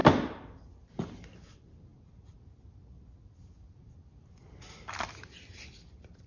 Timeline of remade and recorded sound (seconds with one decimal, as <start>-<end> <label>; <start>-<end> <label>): 0.0-6.3 recorded